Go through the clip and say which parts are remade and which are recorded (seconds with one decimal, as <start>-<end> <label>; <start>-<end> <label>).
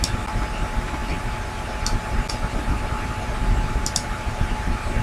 0.0-5.0 recorded